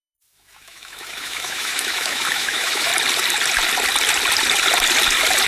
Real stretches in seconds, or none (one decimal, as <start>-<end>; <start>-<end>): 2.9-5.5